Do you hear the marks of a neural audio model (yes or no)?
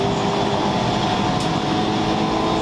no